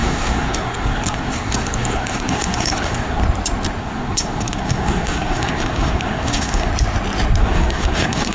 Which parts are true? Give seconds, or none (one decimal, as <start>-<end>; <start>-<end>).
3.2-3.8; 6.7-7.4